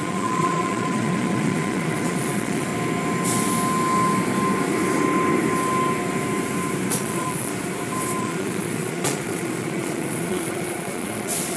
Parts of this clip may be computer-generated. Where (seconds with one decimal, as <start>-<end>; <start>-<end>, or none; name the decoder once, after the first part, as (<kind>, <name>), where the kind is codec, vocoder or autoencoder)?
0.0-2.7 (vocoder, Vocos); 6.9-7.5; 8.2-11.6